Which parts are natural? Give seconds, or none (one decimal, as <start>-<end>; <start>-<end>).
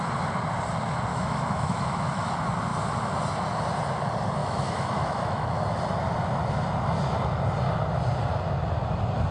0.0-1.1; 2.3-4.4; 5.6-9.3